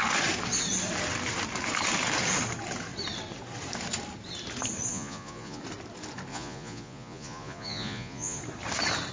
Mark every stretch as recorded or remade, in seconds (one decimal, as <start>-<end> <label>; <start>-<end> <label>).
0.0-4.9 recorded; 4.9-5.6 remade; 5.6-6.3 recorded; 6.3-8.4 remade; 8.4-9.1 recorded